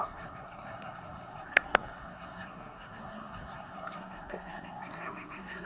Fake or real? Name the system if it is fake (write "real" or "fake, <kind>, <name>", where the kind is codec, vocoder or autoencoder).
fake, codec, SNAC